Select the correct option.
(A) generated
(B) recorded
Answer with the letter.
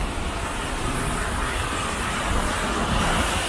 B